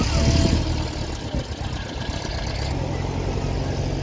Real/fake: real